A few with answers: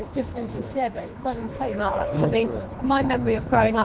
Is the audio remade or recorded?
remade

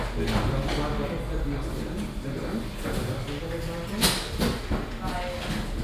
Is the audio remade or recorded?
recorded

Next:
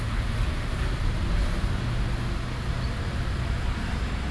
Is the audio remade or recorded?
recorded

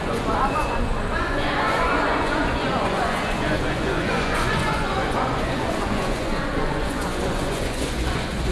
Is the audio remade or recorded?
remade